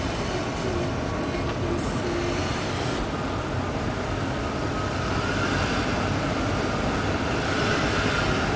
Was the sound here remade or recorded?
recorded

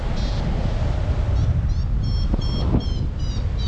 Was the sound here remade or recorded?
recorded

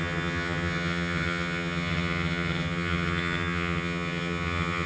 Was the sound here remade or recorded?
remade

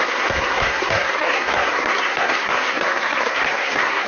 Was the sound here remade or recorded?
remade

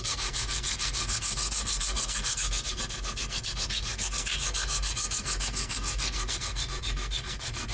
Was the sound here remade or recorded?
remade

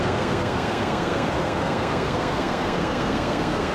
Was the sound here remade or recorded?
remade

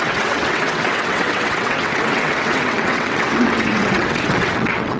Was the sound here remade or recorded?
remade